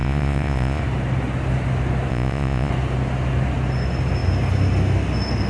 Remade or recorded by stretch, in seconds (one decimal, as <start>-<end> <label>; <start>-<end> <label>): 0.0-0.8 remade; 0.8-2.1 recorded; 2.1-2.7 remade; 2.7-5.5 recorded